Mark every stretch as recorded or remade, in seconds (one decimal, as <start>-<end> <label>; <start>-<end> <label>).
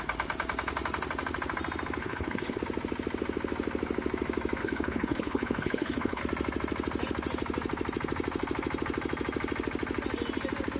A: 0.0-2.0 recorded; 2.0-2.6 remade; 2.6-4.6 recorded; 4.6-6.2 remade; 6.2-10.8 recorded